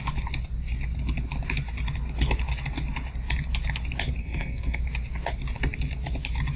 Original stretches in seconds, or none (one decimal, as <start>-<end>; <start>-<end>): 0.0-4.2; 4.8-6.6